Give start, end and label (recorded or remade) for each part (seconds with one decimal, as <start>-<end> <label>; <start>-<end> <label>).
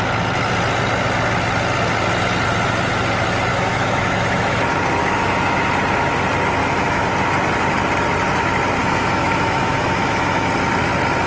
0.0-3.5 recorded; 3.5-4.6 remade; 4.6-5.0 recorded; 5.0-5.6 remade; 5.6-6.6 recorded; 6.6-7.1 remade; 7.1-8.8 recorded; 8.8-10.5 remade; 10.5-11.3 recorded